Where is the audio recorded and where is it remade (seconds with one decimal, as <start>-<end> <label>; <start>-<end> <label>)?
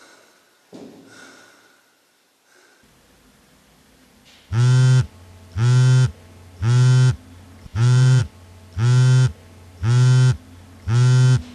0.0-7.7 recorded; 7.7-8.2 remade; 8.2-11.5 recorded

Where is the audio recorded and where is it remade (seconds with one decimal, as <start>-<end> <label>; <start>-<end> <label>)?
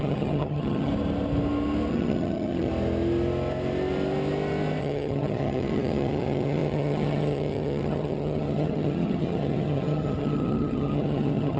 0.0-0.9 remade; 0.9-1.9 recorded; 1.9-2.7 remade; 2.7-4.8 recorded; 4.8-11.6 remade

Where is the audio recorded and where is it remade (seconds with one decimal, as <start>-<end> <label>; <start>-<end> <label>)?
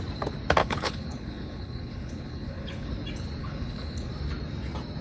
0.0-0.6 recorded; 0.6-2.9 remade; 2.9-3.4 recorded; 3.4-4.1 remade; 4.1-5.0 recorded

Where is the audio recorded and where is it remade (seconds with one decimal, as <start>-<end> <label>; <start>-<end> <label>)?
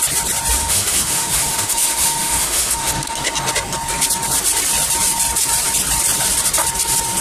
0.0-0.6 recorded; 0.6-3.3 remade; 3.3-7.2 recorded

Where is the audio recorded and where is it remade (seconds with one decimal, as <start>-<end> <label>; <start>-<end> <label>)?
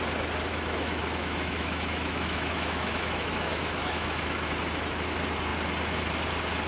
0.0-0.5 recorded; 0.5-4.5 remade; 4.5-6.7 recorded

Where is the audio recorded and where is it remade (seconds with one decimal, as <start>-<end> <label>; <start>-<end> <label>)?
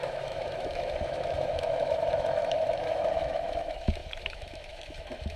0.0-5.4 remade